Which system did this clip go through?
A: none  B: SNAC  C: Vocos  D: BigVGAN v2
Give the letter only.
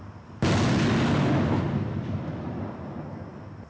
A